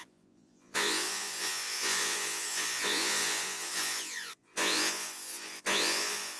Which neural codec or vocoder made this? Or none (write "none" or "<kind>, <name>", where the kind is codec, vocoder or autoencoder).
vocoder, Vocos